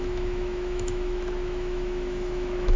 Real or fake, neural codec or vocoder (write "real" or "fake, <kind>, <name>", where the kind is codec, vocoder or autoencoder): fake, autoencoder, DAC-VAE